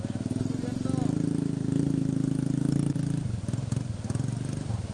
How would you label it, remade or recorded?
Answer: recorded